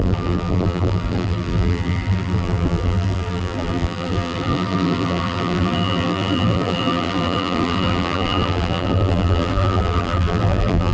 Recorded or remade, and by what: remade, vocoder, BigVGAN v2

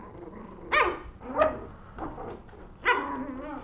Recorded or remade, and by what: recorded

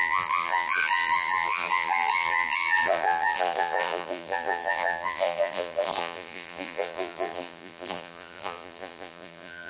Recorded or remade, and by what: remade, vocoder, BigVGAN v2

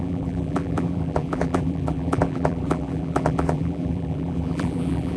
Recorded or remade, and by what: remade, vocoder, BigVGAN v2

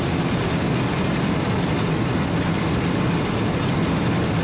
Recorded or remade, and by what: recorded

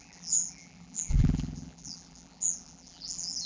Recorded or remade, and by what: remade, vocoder, BigVGAN v2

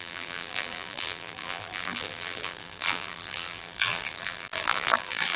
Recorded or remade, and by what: remade, vocoder, BigVGAN v2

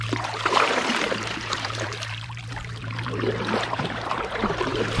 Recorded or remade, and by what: remade, vocoder, BigVGAN v2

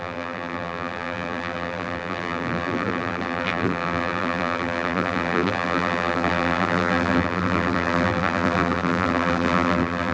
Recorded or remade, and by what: remade, vocoder, BigVGAN v2